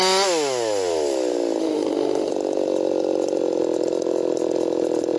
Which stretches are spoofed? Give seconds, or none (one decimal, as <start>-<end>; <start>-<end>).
1.6-2.3